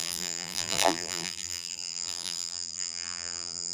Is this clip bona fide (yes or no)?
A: no